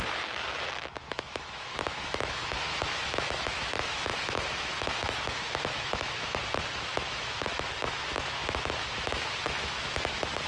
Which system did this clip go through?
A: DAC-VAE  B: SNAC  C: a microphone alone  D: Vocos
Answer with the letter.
A